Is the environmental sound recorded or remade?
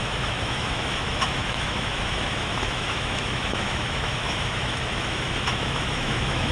remade